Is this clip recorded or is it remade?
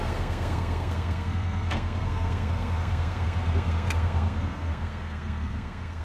remade